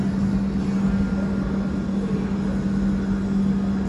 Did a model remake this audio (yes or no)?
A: no